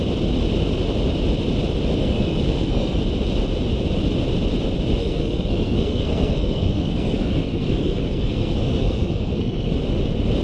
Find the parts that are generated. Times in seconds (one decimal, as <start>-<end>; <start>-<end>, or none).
2.0-3.0; 5.0-9.7